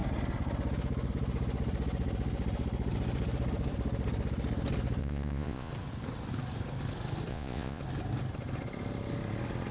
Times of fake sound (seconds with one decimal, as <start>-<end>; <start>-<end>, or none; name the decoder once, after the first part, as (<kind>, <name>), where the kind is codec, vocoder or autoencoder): 5.0-5.7 (vocoder, Vocos); 7.3-7.8